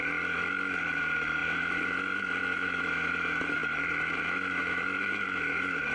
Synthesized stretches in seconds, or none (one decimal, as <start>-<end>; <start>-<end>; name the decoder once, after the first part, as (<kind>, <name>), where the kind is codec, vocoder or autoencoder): 0.0-5.9 (autoencoder, DAC-VAE)